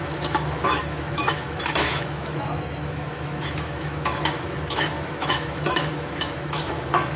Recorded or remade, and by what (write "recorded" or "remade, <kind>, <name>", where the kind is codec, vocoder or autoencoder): remade, autoencoder, DAC-VAE